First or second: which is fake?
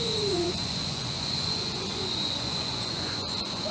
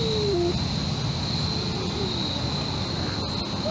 first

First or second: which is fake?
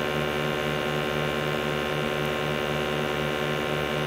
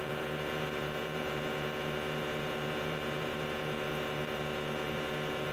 second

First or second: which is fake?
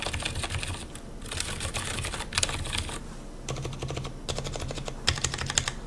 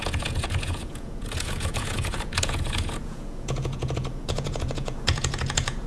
second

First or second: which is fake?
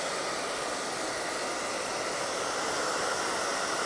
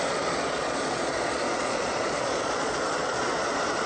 second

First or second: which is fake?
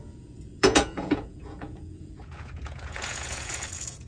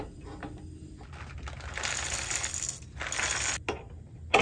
first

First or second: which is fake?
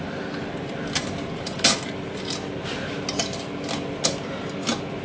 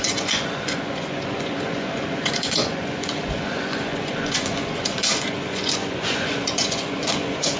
second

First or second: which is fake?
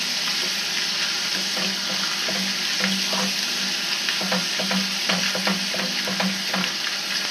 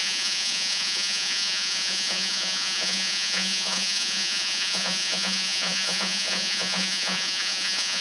second